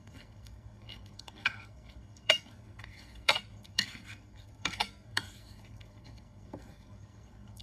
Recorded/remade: remade